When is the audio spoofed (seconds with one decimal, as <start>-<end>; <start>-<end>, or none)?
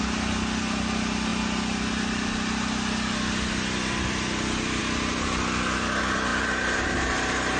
none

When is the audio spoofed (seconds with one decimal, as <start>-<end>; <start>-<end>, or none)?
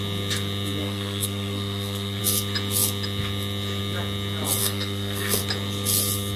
0.8-2.2; 4.6-5.4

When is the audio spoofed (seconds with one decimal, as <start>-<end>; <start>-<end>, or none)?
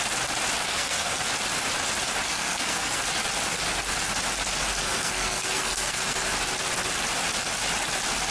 0.7-1.2; 2.3-3.0; 4.8-6.3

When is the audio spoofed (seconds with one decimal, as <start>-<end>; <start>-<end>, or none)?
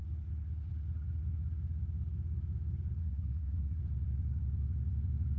3.0-3.8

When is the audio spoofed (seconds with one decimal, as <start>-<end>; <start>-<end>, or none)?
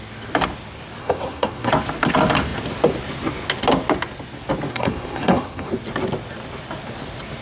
1.0-1.7; 4.7-5.7